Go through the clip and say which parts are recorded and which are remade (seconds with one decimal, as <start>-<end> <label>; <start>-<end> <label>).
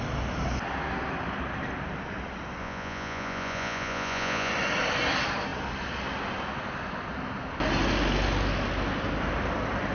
0.0-2.6 recorded; 2.6-4.5 remade; 4.5-9.9 recorded